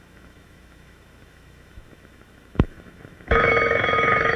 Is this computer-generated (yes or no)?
yes